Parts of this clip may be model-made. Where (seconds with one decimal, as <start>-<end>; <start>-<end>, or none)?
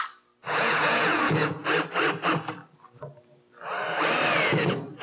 0.4-1.7